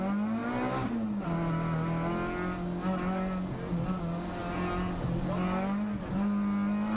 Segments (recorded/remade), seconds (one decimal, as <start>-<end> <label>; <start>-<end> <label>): 0.0-7.0 recorded

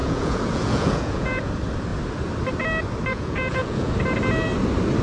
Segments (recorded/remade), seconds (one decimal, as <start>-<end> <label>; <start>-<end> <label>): 0.0-1.5 remade; 1.5-3.1 recorded; 3.1-3.9 remade; 3.9-5.0 recorded

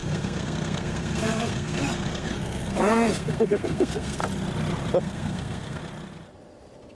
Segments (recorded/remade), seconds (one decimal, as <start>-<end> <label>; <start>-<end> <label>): 0.0-4.2 remade; 4.2-5.0 recorded; 5.0-5.8 remade; 5.8-6.9 recorded

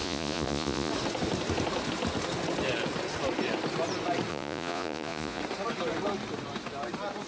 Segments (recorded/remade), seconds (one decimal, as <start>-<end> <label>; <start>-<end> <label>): 0.0-0.9 remade; 0.9-4.3 recorded; 4.3-5.4 remade; 5.4-7.3 recorded

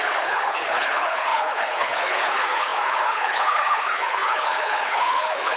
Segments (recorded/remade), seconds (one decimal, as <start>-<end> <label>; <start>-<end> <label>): 0.0-5.6 remade

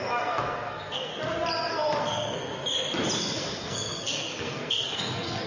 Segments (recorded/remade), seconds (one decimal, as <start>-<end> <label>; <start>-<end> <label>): 0.0-1.1 remade; 1.1-1.7 recorded; 1.7-2.5 remade; 2.5-3.2 recorded; 3.2-5.5 remade

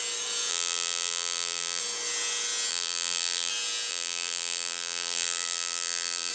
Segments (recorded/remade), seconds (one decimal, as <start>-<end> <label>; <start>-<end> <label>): 0.0-0.5 recorded; 0.5-1.8 remade; 1.8-2.7 recorded; 2.7-3.5 remade; 3.5-3.9 recorded; 3.9-6.3 remade